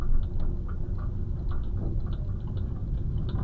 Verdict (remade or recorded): recorded